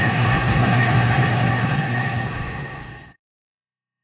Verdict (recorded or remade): remade